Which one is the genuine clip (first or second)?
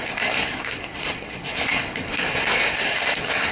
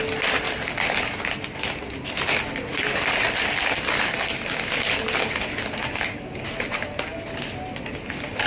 second